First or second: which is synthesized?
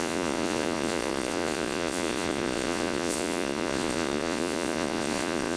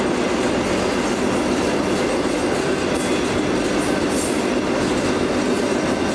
first